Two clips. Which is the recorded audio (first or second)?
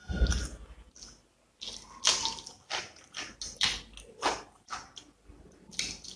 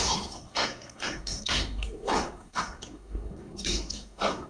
first